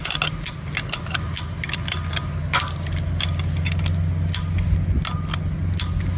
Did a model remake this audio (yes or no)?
no